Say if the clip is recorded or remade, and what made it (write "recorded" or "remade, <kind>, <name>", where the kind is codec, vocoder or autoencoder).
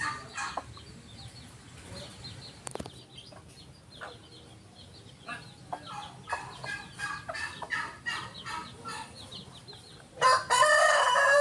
recorded